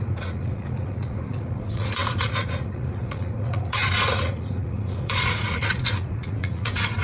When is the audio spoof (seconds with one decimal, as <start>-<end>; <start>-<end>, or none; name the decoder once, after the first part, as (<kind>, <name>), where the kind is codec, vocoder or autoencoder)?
0.0-7.0 (vocoder, Vocos)